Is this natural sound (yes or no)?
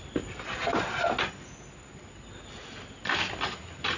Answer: yes